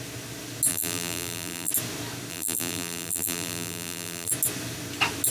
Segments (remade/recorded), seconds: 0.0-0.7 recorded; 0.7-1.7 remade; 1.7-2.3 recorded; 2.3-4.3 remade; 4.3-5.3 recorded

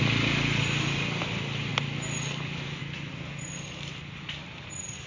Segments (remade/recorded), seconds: 0.0-5.1 recorded

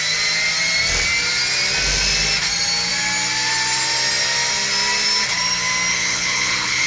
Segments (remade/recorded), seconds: 0.0-5.9 recorded; 5.9-6.9 remade